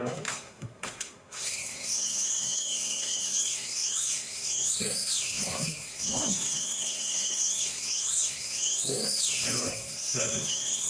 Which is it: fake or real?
fake